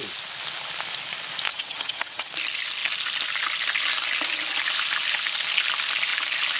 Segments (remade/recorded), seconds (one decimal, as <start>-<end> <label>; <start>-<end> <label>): 0.0-1.5 recorded; 1.5-2.3 remade; 2.3-6.6 recorded